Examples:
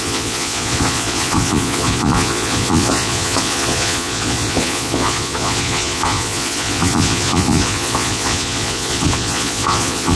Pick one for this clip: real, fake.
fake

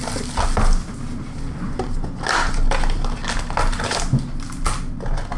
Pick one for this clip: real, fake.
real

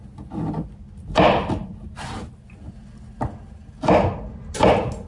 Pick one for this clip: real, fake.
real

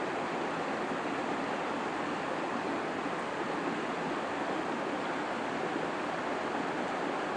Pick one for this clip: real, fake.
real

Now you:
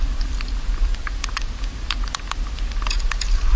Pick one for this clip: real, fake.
real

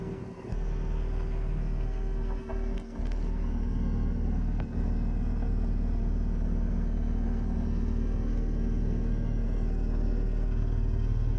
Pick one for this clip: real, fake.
fake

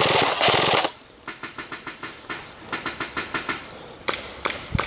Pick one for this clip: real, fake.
real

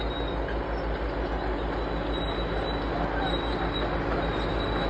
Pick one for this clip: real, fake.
real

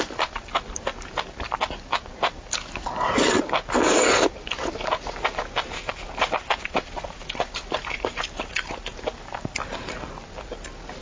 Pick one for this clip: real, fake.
real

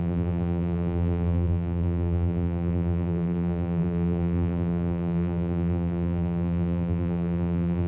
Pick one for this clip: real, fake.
fake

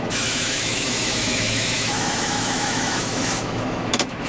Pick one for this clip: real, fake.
fake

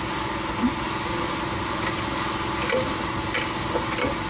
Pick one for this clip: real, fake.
real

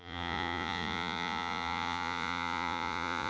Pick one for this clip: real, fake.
fake